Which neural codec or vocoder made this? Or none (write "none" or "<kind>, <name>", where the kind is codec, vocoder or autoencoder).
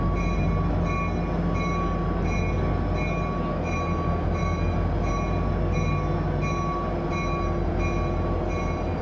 none